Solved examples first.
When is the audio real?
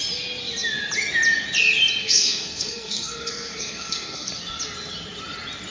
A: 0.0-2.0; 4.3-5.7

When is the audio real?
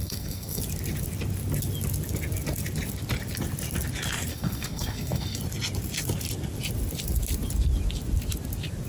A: 0.6-4.3; 5.4-8.9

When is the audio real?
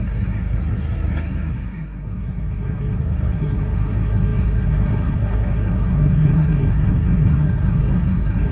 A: none